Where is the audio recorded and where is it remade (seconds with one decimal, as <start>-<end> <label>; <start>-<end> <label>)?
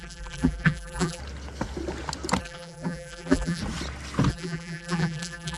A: 0.0-1.2 remade; 1.2-2.4 recorded; 2.4-3.6 remade; 3.6-4.3 recorded; 4.3-5.6 remade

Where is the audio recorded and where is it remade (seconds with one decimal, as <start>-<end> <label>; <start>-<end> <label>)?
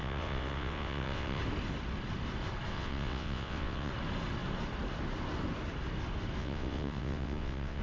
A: 0.0-1.4 remade; 1.4-2.7 recorded; 2.7-3.9 remade; 3.9-6.4 recorded; 6.4-7.8 remade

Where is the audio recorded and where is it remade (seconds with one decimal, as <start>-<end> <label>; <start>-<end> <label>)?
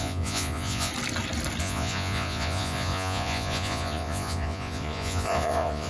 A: 0.0-0.9 remade; 0.9-1.6 recorded; 1.6-5.9 remade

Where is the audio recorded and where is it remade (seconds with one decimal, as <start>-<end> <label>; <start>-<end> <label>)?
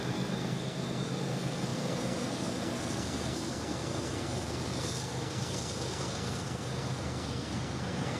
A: 0.0-8.2 remade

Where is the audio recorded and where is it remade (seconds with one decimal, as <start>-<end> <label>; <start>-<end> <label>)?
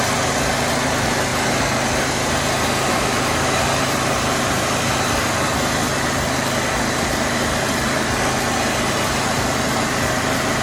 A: 0.0-2.9 recorded; 2.9-3.6 remade; 3.6-10.6 recorded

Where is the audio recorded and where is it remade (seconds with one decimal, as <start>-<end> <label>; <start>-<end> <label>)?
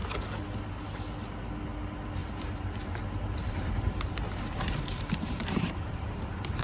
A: 0.0-2.2 recorded; 2.2-6.6 remade